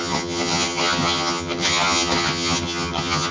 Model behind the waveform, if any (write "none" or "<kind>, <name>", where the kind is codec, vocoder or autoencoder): vocoder, HiFi-GAN